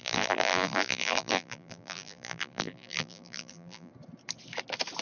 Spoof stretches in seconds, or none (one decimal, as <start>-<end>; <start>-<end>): 0.0-3.9